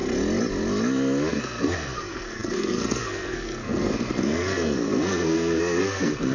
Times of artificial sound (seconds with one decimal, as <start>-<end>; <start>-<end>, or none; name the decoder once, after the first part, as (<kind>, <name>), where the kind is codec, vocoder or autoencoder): 1.3-6.3 (codec, SNAC)